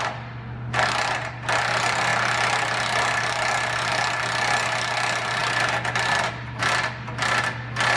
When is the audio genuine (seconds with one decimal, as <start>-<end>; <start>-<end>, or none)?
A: 0.0-8.0